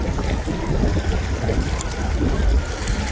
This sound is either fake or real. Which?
real